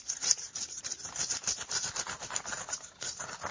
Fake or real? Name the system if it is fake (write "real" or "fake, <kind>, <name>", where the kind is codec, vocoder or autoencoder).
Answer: fake, vocoder, BigVGAN v2